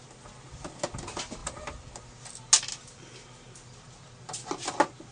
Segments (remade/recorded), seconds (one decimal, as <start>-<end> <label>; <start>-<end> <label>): 0.0-5.1 recorded